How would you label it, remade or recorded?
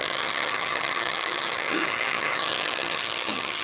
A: remade